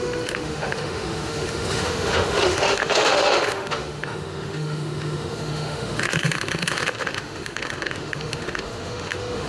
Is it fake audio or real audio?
fake